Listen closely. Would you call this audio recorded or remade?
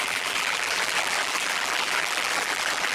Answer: remade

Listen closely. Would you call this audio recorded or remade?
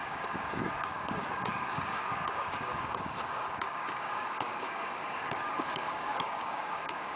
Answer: remade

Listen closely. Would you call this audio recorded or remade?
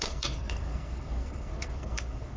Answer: remade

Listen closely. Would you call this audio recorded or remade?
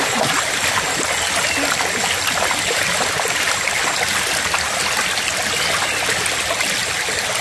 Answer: recorded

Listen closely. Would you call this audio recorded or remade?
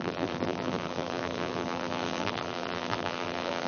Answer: remade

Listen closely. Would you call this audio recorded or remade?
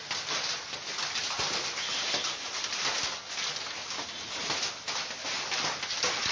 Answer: recorded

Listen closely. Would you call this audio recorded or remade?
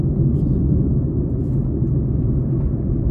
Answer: recorded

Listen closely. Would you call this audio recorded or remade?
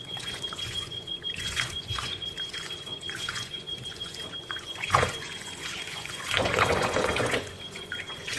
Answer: remade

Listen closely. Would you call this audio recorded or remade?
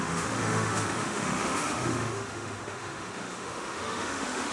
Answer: remade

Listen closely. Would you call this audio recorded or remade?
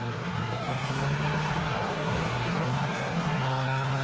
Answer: remade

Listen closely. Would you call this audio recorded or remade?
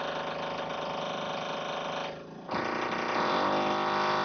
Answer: recorded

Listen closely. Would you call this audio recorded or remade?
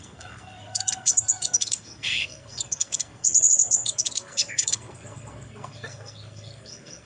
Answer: remade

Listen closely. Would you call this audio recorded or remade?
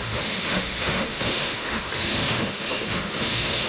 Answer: remade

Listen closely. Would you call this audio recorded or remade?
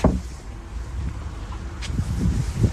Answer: recorded